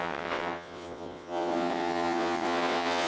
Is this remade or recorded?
remade